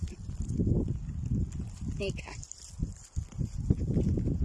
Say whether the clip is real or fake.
real